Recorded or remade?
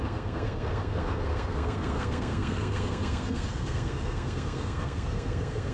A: remade